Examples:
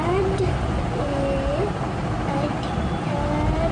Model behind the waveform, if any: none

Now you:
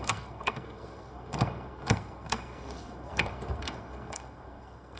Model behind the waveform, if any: codec, SNAC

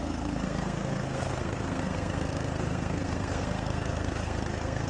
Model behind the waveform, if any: codec, SNAC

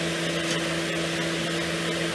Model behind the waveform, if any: none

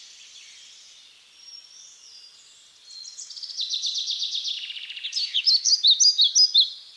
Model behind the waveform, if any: none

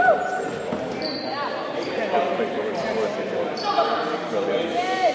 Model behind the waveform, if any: none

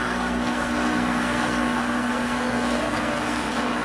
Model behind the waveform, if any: codec, SNAC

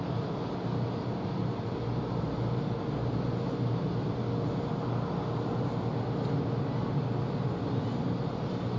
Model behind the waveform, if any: none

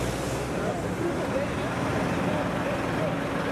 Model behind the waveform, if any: none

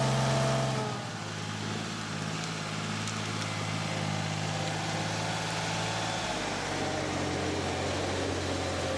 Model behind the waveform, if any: none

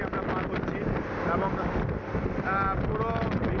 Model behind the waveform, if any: none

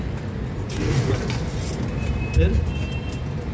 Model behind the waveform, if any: none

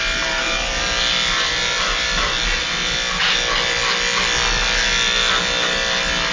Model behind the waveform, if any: none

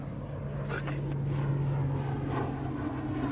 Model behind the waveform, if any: none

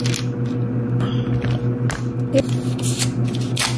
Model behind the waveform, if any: none